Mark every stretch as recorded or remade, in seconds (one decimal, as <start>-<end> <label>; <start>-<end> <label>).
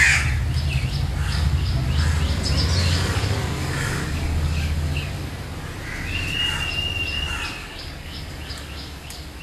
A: 0.0-1.2 recorded; 1.2-1.7 remade; 1.7-2.8 recorded; 2.8-5.3 remade; 5.3-7.6 recorded; 7.6-9.4 remade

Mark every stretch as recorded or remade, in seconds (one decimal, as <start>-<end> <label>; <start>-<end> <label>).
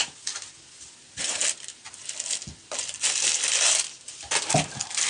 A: 0.0-5.1 recorded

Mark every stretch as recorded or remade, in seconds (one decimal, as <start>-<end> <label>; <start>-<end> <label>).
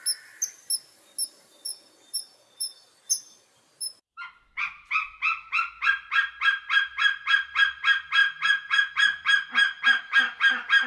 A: 0.0-8.2 recorded; 8.2-8.9 remade; 8.9-10.9 recorded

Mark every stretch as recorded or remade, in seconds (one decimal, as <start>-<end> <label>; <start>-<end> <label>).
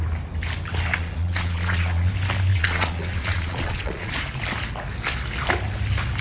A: 0.0-0.9 recorded; 0.9-2.1 remade; 2.1-2.5 recorded; 2.5-4.2 remade; 4.2-6.2 recorded